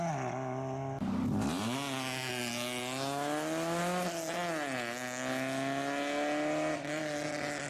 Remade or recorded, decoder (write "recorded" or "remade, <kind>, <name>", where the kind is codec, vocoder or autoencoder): recorded